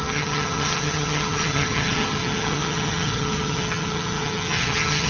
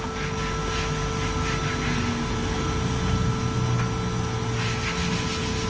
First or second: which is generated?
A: first